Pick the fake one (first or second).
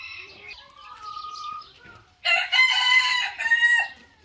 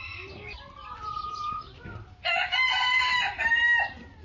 first